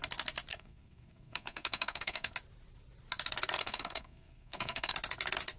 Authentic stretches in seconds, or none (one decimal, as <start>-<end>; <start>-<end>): 0.0-0.5; 2.3-3.6; 4.9-5.6